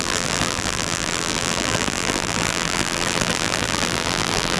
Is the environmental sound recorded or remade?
remade